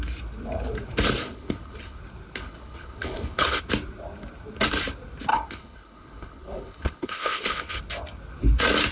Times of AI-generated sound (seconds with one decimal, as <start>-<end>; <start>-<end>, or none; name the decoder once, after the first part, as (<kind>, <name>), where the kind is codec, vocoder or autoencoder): 1.2-2.0 (codec, HILCodec); 2.4-3.6; 5.3-7.8